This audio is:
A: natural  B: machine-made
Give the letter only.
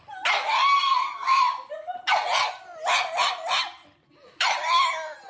A